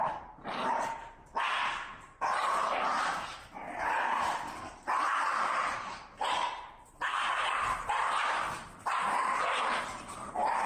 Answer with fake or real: fake